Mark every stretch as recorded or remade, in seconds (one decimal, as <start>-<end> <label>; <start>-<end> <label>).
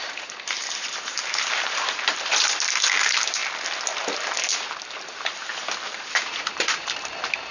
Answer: 0.0-3.4 remade; 3.4-4.5 recorded; 4.5-5.5 remade; 5.5-6.0 recorded; 6.0-7.5 remade